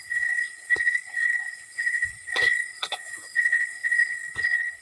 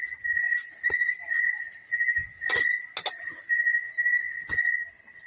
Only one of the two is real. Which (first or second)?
second